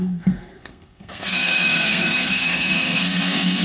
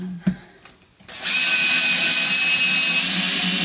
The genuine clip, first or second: second